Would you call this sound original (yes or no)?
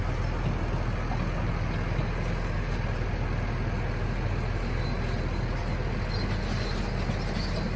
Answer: yes